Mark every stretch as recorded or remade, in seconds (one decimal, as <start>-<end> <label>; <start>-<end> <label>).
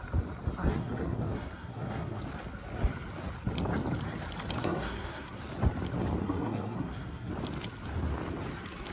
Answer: 0.0-0.7 recorded; 0.7-2.2 remade; 2.2-4.6 recorded; 4.6-5.4 remade; 5.4-6.2 recorded; 6.2-7.3 remade; 7.3-8.9 recorded